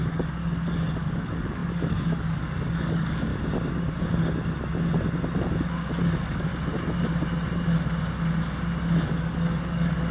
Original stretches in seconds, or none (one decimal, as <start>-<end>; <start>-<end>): 3.3-5.7; 6.5-9.1